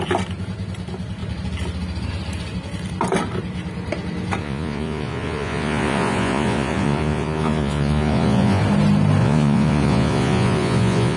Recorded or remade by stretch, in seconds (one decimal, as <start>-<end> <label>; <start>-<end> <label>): 0.0-4.4 recorded; 4.4-8.6 remade; 8.6-9.2 recorded; 9.2-11.2 remade